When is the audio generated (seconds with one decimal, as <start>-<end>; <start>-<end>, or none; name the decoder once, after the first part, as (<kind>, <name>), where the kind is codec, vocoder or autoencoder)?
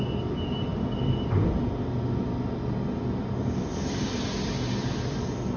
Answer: none